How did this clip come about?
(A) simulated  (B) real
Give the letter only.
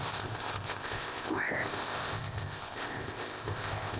A